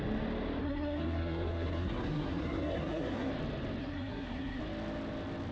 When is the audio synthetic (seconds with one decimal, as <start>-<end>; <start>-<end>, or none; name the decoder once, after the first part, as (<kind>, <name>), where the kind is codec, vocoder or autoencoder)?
0.6-3.3 (codec, SNAC); 3.8-4.6